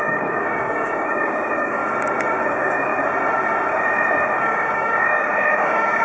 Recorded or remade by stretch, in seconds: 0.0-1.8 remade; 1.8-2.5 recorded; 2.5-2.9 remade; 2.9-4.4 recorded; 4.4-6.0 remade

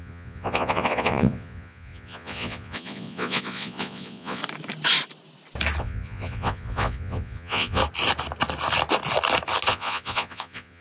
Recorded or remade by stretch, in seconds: 0.0-4.4 remade; 4.4-5.8 recorded; 5.8-7.8 remade; 7.8-9.7 recorded; 9.7-10.8 remade